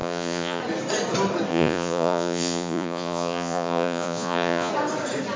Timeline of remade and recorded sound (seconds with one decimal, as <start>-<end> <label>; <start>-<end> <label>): 0.0-0.6 remade; 0.6-1.5 recorded; 1.5-4.7 remade; 4.7-5.4 recorded